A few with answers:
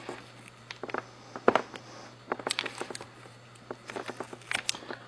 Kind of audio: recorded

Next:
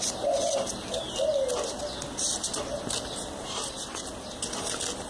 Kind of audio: recorded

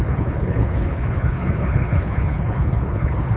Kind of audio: remade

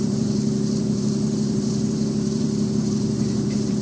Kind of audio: remade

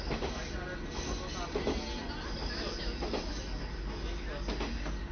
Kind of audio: recorded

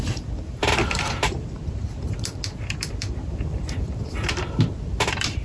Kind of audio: remade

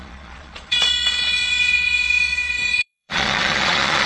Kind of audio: remade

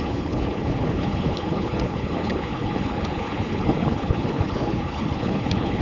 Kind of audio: remade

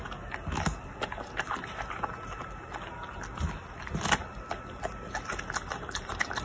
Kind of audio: recorded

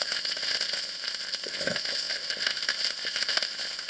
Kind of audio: remade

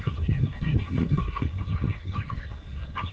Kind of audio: remade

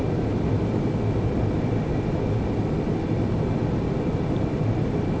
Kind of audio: recorded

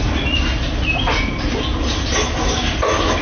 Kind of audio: recorded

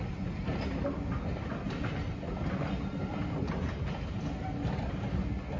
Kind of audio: recorded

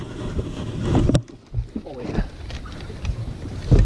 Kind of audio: recorded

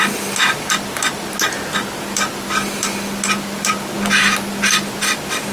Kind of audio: recorded